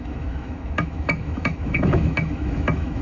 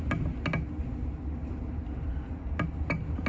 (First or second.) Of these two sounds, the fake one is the first